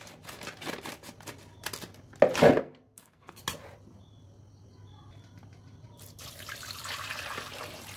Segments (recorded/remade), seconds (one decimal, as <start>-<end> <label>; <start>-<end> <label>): 0.0-2.6 recorded; 2.6-3.4 remade; 3.4-8.0 recorded